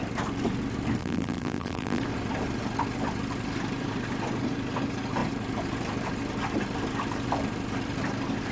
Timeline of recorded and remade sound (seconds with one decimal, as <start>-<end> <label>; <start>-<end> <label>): 0.0-1.0 recorded; 1.0-2.0 remade; 2.0-8.5 recorded